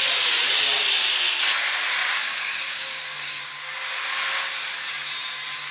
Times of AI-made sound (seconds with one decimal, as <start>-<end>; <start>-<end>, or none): 2.0-3.4